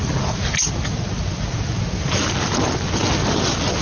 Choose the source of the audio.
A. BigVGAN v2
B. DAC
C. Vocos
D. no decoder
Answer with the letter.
D